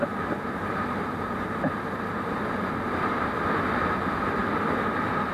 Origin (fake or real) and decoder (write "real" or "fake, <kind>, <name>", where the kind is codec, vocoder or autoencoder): real